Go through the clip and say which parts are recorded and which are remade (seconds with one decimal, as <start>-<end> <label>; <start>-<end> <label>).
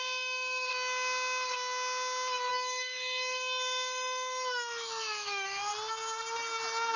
0.0-0.7 remade; 0.7-2.5 recorded; 2.5-5.7 remade; 5.7-7.0 recorded